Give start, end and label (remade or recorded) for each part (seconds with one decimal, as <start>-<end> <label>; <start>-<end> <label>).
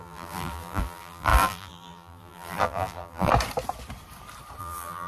0.0-3.3 remade; 3.3-4.6 recorded; 4.6-5.1 remade